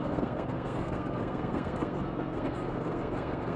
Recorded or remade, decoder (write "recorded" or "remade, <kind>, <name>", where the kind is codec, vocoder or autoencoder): remade, codec, SNAC